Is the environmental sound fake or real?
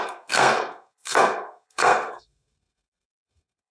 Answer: fake